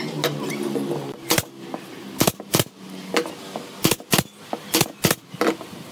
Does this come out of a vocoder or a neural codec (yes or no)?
no